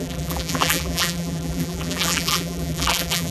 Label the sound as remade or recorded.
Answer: remade